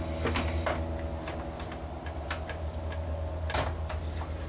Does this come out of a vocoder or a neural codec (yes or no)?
no